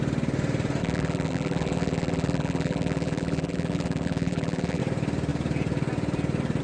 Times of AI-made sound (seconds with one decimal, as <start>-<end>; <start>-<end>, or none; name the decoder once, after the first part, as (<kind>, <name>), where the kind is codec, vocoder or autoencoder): 0.8-4.8 (vocoder, BigVGAN v2)